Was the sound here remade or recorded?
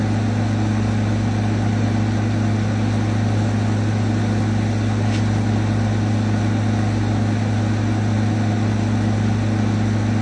recorded